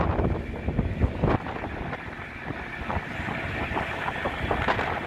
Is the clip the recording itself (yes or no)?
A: yes